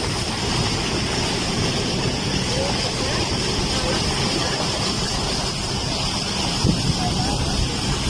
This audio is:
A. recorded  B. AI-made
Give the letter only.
A